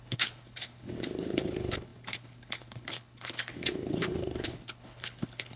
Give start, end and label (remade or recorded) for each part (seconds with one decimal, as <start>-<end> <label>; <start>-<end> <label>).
0.0-5.6 remade